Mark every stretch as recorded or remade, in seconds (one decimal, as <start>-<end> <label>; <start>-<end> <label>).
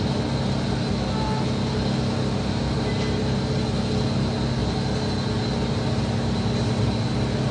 0.0-7.5 recorded